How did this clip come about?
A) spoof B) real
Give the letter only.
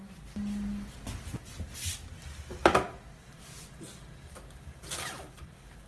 B